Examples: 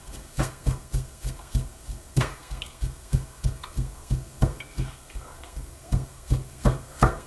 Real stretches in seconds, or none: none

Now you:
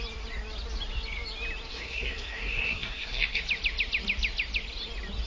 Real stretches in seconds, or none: 0.0-1.7; 3.4-5.3

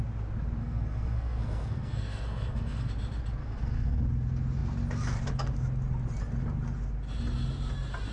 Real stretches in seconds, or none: 0.0-0.6; 2.9-3.4; 4.0-8.1

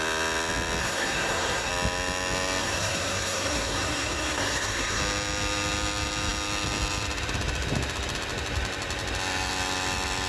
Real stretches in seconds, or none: 0.0-0.8; 1.7-2.6; 5.0-10.3

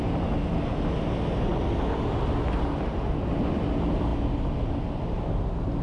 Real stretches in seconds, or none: 0.0-5.8

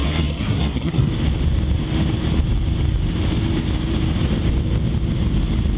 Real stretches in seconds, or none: 1.1-5.8

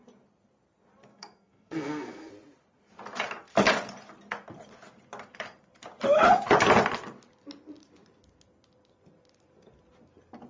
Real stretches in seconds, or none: 0.0-1.1; 2.3-10.5